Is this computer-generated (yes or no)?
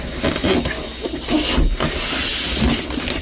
no